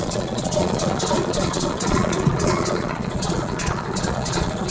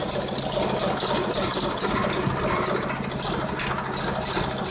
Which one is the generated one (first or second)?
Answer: first